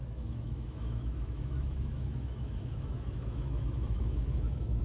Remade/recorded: remade